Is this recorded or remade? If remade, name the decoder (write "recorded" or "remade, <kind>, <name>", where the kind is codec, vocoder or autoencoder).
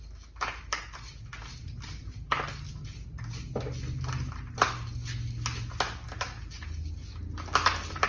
recorded